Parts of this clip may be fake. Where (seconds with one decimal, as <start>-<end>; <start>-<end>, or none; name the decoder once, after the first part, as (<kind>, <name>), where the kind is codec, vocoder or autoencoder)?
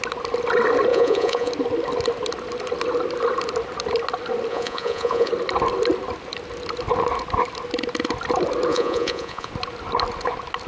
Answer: 0.9-1.5 (vocoder, Vocos); 4.5-5.3; 8.7-9.5